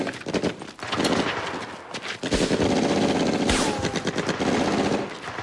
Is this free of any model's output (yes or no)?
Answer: yes